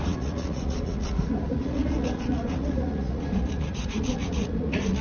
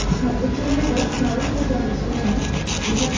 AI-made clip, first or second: first